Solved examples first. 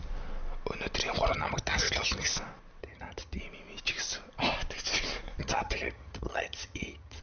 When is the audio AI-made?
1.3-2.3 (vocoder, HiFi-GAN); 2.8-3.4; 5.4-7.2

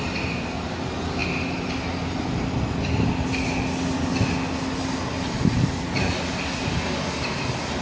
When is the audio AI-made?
none

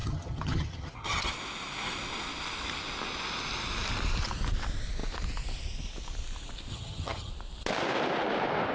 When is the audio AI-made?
0.0-1.3 (vocoder, HiFi-GAN); 6.7-7.3

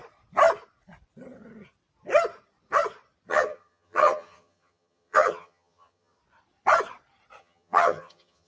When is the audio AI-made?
3.3-6.2 (vocoder, HiFi-GAN); 7.4-8.5

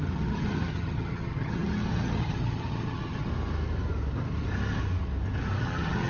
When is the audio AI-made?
0.0-3.3 (vocoder, HiFi-GAN); 5.6-6.1

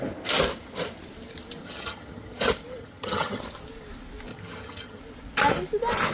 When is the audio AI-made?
1.6-2.4 (vocoder, HiFi-GAN); 2.8-3.4; 4.3-5.0